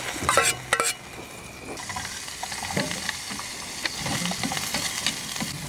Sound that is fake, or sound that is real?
real